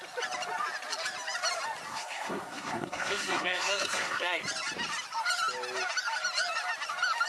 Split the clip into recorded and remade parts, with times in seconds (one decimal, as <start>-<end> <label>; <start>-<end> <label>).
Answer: 0.0-1.9 recorded; 1.9-4.4 remade; 4.4-7.3 recorded